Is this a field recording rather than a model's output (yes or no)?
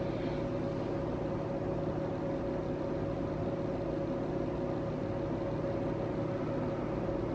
yes